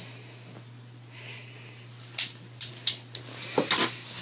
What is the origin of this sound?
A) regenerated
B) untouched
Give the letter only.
B